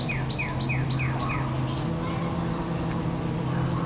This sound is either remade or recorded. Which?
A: recorded